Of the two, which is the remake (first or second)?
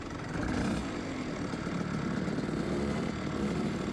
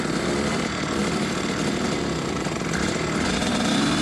second